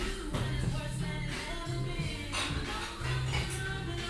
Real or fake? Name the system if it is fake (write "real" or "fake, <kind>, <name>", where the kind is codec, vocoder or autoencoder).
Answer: real